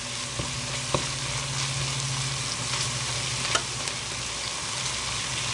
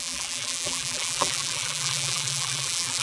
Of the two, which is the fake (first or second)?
second